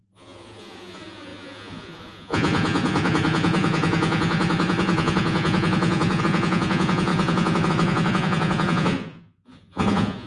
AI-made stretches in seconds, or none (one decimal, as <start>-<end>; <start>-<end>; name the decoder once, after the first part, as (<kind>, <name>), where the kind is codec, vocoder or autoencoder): 0.0-10.3 (vocoder, Vocos)